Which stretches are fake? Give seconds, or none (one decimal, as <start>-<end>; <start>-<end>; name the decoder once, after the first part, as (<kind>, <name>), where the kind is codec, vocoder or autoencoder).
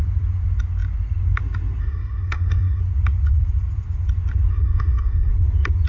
1.8-2.8 (codec, SNAC); 4.5-5.3